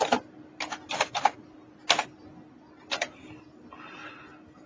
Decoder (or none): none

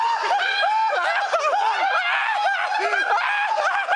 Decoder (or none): none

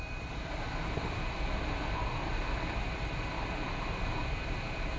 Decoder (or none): vocoder, BigVGAN v2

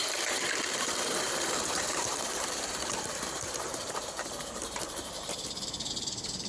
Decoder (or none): vocoder, BigVGAN v2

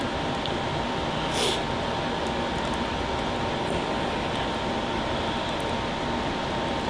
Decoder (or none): none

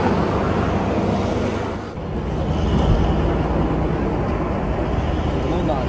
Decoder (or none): none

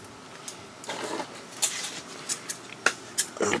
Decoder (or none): none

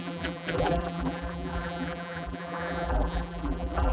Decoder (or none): vocoder, BigVGAN v2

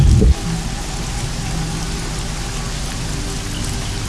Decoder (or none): none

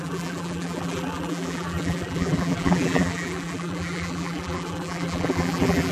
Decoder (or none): vocoder, BigVGAN v2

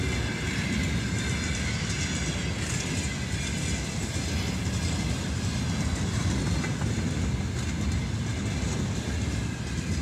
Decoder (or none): none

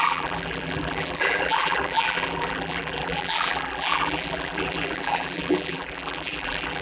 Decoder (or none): vocoder, BigVGAN v2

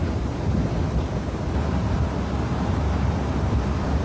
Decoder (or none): vocoder, BigVGAN v2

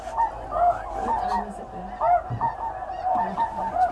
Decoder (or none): none